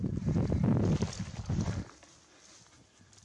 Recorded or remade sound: recorded